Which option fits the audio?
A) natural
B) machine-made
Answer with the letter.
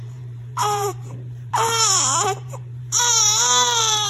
B